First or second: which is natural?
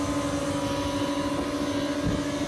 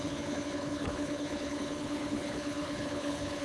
first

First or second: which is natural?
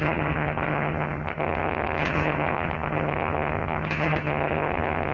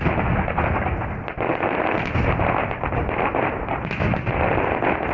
second